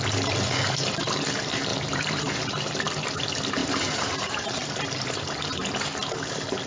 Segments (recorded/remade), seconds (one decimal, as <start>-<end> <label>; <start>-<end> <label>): 0.0-1.7 recorded; 1.7-2.3 remade; 2.3-3.6 recorded; 3.6-5.4 remade; 5.4-6.7 recorded